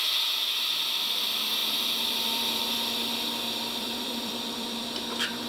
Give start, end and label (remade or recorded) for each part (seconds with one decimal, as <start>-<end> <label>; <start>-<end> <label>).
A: 0.0-1.6 recorded; 1.6-2.5 remade; 2.5-3.6 recorded; 3.6-4.8 remade; 4.8-5.5 recorded